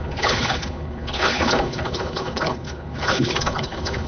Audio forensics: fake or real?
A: fake